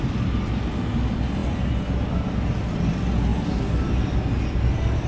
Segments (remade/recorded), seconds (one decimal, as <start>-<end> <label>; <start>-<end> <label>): 0.0-5.1 recorded